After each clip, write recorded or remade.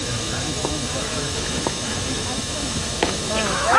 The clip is remade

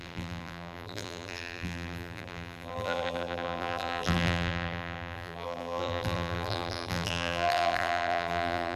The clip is remade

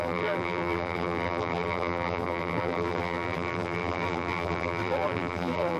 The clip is remade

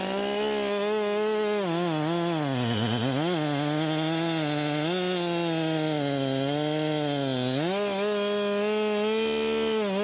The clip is recorded